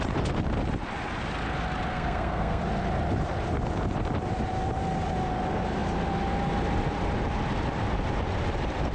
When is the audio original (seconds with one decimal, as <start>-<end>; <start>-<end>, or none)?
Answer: 0.0-1.9; 2.6-8.9